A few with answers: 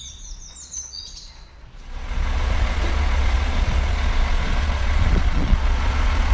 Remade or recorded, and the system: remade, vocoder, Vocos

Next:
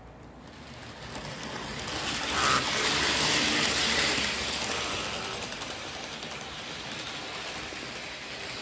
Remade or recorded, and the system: recorded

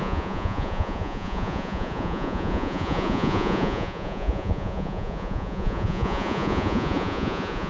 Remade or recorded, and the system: remade, vocoder, Vocos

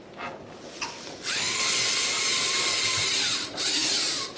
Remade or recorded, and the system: recorded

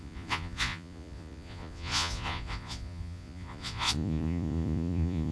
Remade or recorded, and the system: remade, vocoder, Vocos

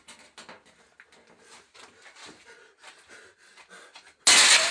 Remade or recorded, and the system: recorded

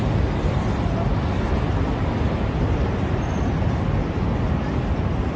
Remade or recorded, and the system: recorded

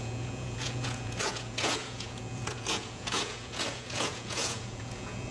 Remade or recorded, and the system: remade, vocoder, Vocos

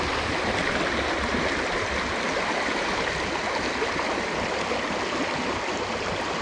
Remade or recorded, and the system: recorded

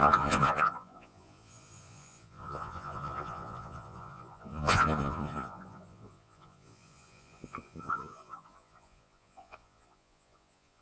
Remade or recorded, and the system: remade, vocoder, Vocos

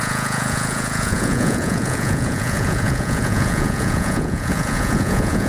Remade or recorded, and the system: remade, vocoder, Vocos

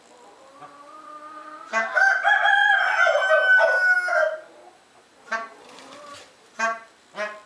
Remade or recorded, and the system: recorded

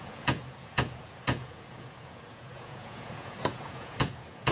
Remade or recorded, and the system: remade, vocoder, Vocos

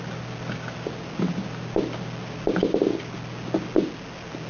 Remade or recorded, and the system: recorded